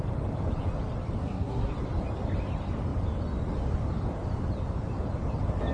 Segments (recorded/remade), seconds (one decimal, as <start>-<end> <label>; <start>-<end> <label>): 0.0-1.2 recorded; 1.2-1.7 remade; 1.7-5.7 recorded